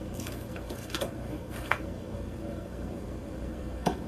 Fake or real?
fake